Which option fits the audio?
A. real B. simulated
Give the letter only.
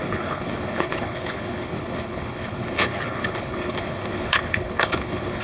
B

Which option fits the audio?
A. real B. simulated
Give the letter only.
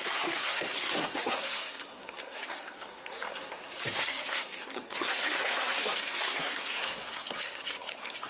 B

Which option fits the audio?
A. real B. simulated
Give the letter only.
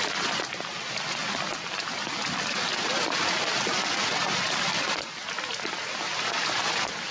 A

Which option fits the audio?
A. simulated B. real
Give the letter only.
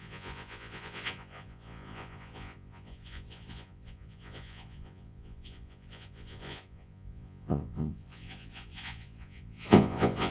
A